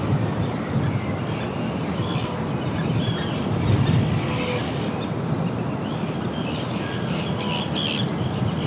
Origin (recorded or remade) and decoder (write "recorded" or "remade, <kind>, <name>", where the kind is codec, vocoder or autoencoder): recorded